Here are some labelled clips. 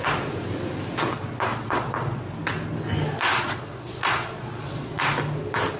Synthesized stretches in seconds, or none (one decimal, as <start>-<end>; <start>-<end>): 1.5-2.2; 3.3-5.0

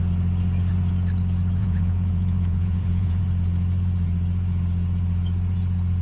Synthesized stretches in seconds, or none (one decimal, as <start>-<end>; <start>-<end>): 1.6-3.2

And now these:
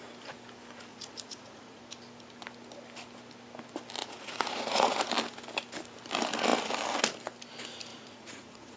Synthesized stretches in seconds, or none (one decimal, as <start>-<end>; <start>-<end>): 0.9-1.8; 4.0-5.1; 7.9-8.8

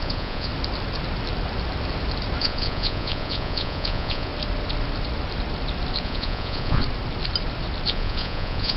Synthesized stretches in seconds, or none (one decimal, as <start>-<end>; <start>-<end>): 0.0-0.5; 2.4-4.3; 6.0-6.8; 7.9-8.8

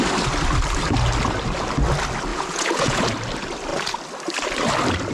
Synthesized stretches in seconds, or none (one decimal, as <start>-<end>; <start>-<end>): 2.3-3.0